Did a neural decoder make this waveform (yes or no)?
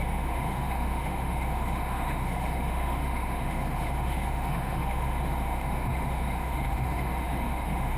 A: yes